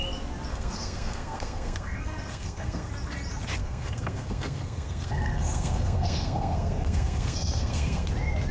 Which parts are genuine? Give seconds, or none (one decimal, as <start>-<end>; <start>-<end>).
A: 0.0-0.5; 2.9-3.6; 8.1-8.5